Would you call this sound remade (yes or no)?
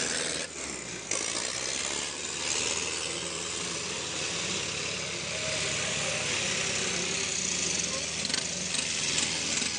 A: no